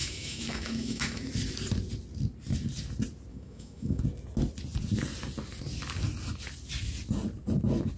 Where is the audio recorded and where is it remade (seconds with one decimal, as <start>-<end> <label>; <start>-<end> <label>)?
0.0-1.3 remade; 1.3-3.3 recorded; 3.3-4.0 remade; 4.0-8.0 recorded